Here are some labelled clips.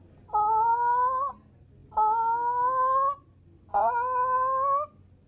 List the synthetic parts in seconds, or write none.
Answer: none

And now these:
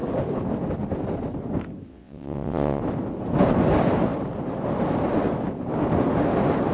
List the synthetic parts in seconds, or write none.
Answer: 1.9-2.8 (vocoder, WaveNeXt)

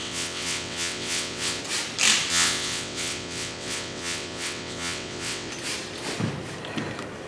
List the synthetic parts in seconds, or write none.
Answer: 0.0-1.6 (vocoder, WaveNeXt); 2.3-5.5

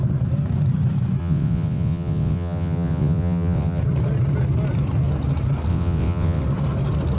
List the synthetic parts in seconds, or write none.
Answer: 1.2-3.8 (vocoder, WaveNeXt); 5.7-6.4

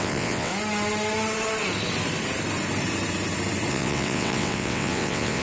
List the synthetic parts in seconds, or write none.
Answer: 0.0-0.5 (vocoder, WaveNeXt); 3.7-5.4

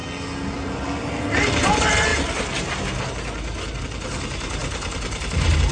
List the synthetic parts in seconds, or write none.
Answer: none

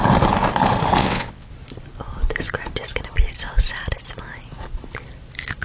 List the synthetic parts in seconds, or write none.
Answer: 1.0-1.5 (vocoder, WaveNeXt)

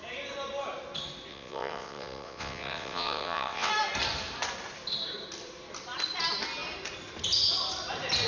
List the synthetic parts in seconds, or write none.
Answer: 1.3-3.7 (vocoder, WaveNeXt)